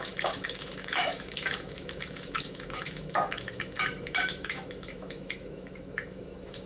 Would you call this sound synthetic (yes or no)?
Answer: yes